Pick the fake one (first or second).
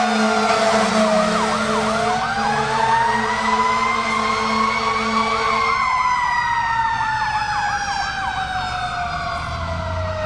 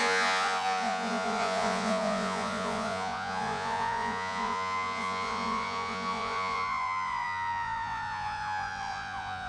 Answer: second